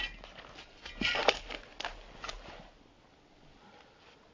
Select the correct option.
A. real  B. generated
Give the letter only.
A